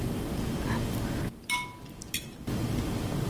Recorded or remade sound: recorded